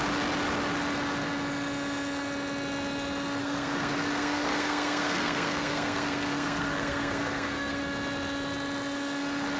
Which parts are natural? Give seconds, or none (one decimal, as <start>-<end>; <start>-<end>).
0.0-3.4; 7.8-9.6